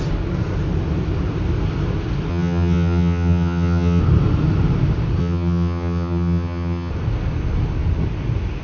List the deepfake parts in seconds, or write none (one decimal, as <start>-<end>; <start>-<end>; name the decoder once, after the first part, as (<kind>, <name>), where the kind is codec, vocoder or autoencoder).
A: 2.3-4.0 (vocoder, HiFi-GAN); 5.2-6.9